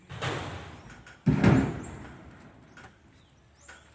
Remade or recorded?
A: recorded